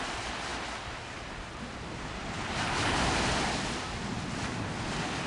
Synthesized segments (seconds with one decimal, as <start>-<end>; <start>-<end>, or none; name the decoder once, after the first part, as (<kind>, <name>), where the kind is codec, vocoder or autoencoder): none

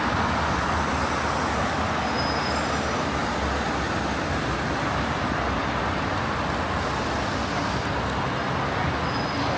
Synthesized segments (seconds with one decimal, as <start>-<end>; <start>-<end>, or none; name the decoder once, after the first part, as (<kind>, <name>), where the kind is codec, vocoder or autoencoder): none

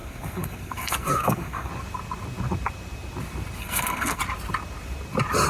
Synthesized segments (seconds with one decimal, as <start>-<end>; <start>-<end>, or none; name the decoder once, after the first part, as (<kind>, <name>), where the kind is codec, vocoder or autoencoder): 0.0-1.7 (codec, SNAC); 3.6-4.2